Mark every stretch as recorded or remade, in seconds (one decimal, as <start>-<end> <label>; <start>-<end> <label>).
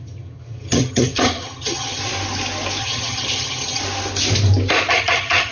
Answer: 0.0-2.0 remade; 2.0-2.8 recorded; 2.8-3.8 remade; 3.8-4.9 recorded; 4.9-5.5 remade